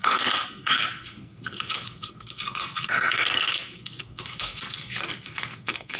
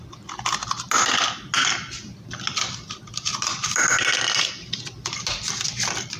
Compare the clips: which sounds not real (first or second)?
first